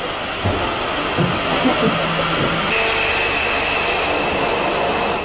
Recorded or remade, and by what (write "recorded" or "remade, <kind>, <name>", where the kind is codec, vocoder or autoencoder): recorded